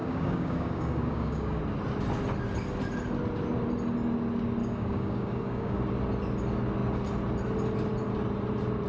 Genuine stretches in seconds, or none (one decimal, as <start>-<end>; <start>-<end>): 1.6-4.6; 5.8-8.9